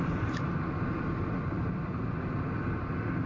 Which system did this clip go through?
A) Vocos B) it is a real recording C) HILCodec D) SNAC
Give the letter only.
B